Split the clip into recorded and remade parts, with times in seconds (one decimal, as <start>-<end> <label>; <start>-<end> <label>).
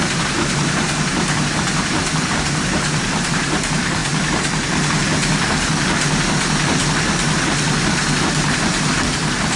0.0-4.0 remade; 4.0-8.2 recorded; 8.2-9.6 remade